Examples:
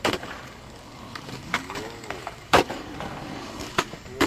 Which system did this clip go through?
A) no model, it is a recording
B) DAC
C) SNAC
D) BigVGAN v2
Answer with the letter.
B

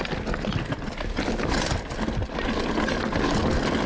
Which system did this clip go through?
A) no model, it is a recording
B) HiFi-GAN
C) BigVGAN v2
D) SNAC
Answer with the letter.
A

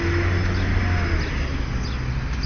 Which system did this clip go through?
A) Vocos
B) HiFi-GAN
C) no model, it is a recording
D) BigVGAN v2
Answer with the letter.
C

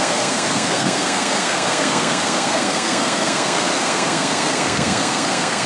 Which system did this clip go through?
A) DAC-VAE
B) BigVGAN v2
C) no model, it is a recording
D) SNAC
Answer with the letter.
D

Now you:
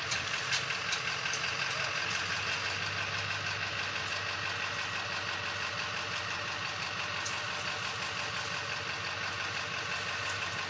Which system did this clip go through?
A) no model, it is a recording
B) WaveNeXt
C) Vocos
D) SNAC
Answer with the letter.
A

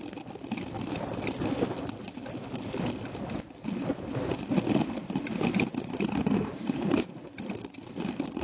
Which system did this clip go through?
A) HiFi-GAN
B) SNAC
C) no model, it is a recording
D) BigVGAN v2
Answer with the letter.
C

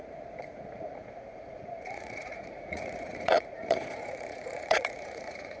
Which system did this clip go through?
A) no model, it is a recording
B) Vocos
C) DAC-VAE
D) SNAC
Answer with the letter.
B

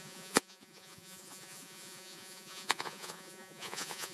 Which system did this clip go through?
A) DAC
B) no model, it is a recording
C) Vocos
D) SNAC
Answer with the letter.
C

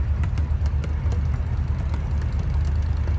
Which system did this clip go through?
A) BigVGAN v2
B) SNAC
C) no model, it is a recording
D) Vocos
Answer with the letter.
C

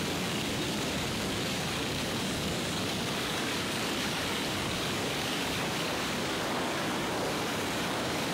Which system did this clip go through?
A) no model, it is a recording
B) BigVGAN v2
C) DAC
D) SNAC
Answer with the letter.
C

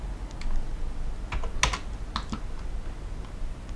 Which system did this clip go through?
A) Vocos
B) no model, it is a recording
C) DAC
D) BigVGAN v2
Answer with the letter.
B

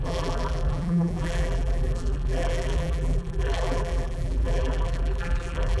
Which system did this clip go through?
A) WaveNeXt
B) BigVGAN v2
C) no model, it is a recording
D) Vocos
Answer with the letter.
B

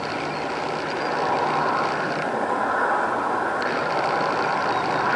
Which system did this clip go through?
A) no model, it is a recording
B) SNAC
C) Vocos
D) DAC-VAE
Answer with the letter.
A